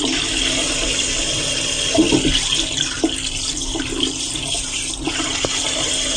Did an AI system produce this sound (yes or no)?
no